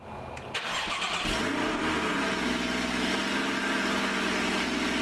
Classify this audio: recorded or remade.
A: recorded